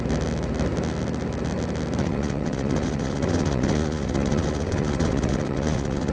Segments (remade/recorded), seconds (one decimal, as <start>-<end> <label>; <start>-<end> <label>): 0.0-2.0 recorded; 2.0-6.1 remade